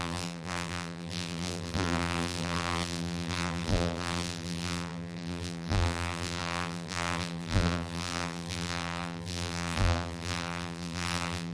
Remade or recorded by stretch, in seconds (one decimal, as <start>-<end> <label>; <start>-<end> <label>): 0.0-11.5 remade